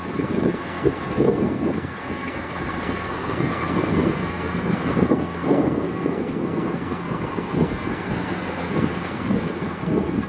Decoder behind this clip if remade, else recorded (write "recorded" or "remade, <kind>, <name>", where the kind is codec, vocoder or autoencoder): remade, codec, SNAC